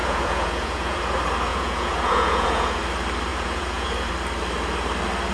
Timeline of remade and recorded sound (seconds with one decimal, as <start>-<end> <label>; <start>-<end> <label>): 0.0-1.0 remade; 1.0-1.5 recorded; 1.5-2.8 remade; 2.8-3.3 recorded; 3.3-4.1 remade; 4.1-5.3 recorded